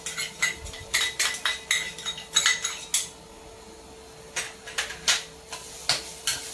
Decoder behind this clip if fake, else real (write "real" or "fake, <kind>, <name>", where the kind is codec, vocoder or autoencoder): real